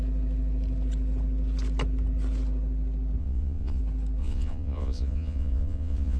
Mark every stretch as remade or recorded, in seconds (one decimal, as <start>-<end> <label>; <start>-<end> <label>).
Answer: 0.0-3.2 recorded; 3.2-3.8 remade; 3.8-4.2 recorded; 4.2-6.2 remade